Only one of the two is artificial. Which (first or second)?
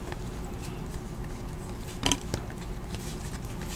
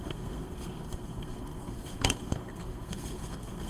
second